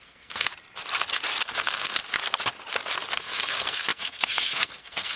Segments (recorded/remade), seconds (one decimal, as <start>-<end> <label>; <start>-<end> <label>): 0.0-0.5 remade; 0.5-1.4 recorded; 1.4-2.0 remade; 2.0-3.1 recorded; 3.1-5.2 remade